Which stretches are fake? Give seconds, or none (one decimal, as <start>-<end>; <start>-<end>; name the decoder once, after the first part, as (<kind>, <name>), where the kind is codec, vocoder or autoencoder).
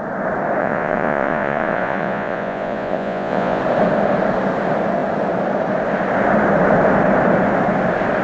0.6-3.6 (vocoder, Vocos)